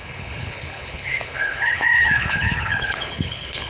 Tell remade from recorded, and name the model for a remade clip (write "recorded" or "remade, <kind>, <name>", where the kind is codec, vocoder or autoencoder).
remade, codec, HILCodec